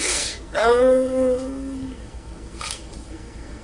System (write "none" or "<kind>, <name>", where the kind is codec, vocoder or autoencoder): codec, SNAC